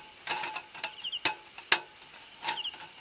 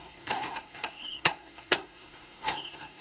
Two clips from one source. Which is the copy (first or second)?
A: second